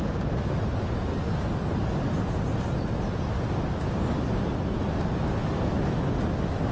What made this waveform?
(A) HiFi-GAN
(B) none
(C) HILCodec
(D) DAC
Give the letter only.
B